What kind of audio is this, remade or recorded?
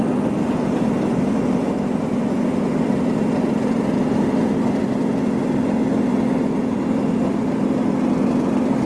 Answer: recorded